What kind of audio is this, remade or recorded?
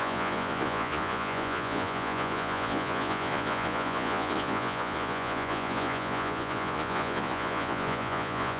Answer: remade